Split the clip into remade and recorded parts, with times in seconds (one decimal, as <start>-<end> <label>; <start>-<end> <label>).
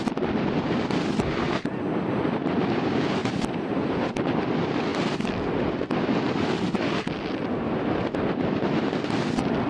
0.0-3.2 recorded; 3.2-4.1 remade; 4.1-4.9 recorded; 4.9-5.8 remade; 5.8-9.7 recorded